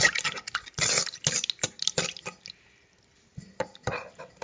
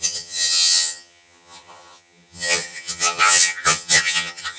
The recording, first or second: first